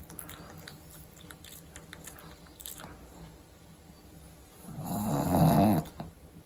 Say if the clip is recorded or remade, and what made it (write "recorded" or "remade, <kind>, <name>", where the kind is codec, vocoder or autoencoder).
recorded